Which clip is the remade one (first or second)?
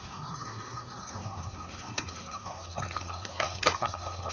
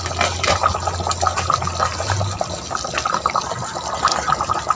first